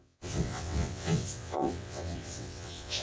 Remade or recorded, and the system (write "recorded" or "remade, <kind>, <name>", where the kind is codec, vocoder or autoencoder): remade, vocoder, WaveNeXt